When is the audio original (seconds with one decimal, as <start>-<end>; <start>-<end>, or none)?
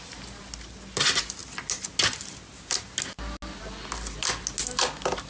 0.0-5.3